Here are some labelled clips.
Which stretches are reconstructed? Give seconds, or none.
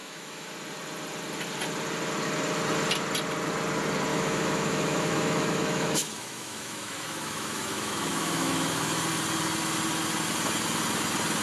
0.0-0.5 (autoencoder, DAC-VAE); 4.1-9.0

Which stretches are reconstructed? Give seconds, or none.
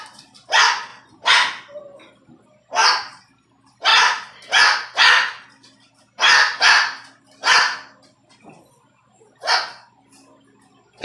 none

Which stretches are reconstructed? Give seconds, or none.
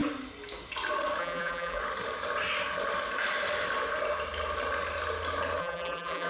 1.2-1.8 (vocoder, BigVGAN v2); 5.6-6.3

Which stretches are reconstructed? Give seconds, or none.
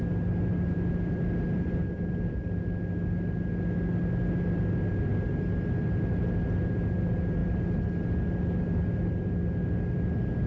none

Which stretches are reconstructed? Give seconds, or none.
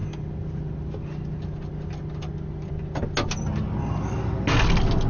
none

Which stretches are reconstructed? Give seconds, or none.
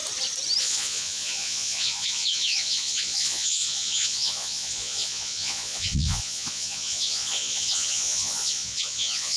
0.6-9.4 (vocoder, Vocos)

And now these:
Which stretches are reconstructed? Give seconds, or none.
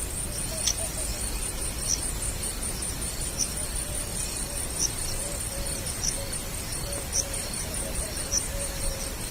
4.1-9.3 (vocoder, BigVGAN v2)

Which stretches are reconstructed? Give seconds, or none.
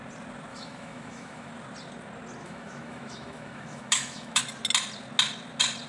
0.5-1.5 (autoencoder, DAC-VAE); 2.4-4.4